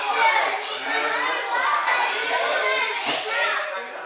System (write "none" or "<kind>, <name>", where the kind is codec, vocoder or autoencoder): none